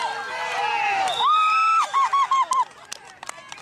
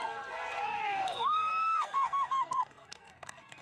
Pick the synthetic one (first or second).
second